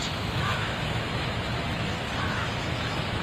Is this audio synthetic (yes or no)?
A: yes